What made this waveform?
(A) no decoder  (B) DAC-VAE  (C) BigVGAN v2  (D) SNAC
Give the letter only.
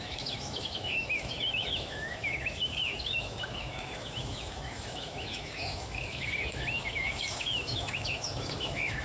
B